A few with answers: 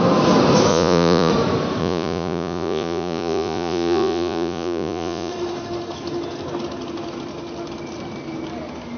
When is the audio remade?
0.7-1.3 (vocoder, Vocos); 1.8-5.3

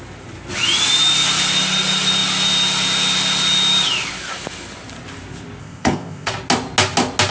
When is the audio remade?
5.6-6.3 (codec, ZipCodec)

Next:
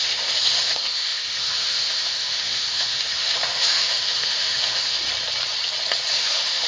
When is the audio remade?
0.0-5.0 (autoencoder, DAC-VAE); 6.1-6.7

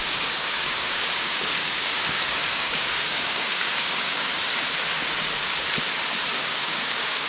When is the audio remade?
0.0-4.3 (codec, DAC); 6.4-7.3

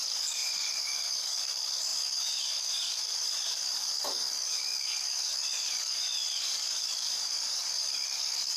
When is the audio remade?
0.0-8.6 (codec, DAC)